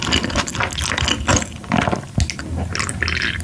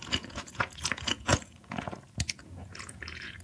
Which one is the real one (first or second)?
first